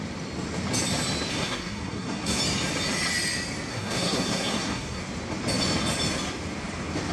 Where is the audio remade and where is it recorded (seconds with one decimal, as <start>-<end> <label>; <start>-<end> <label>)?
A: 0.0-1.3 recorded; 1.3-2.4 remade; 2.4-3.7 recorded; 3.7-5.0 remade; 5.0-7.1 recorded

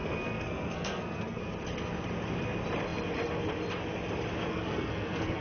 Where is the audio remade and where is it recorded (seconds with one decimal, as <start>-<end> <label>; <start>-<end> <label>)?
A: 0.0-1.4 remade; 1.4-4.5 recorded; 4.5-5.4 remade

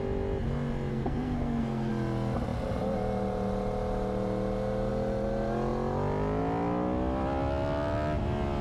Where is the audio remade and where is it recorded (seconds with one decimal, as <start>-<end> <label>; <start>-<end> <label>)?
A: 0.0-0.9 recorded; 0.9-1.9 remade; 1.9-8.6 recorded

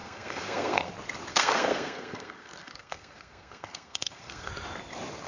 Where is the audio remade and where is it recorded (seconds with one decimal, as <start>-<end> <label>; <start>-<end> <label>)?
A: 0.0-0.9 remade; 0.9-1.3 recorded; 1.3-4.5 remade; 4.5-5.3 recorded